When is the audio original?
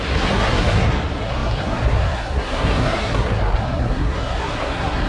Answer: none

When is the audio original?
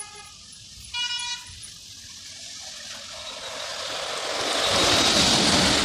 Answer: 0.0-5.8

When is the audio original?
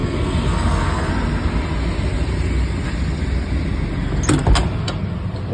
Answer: 1.1-5.5